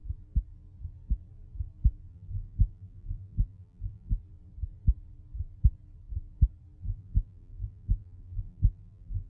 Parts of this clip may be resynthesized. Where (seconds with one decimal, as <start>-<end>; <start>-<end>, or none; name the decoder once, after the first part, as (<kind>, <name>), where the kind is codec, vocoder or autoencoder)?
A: 2.1-4.2 (vocoder, BigVGAN v2); 6.8-9.3